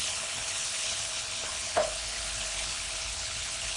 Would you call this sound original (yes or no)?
no